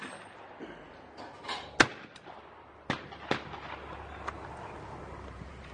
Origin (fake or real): real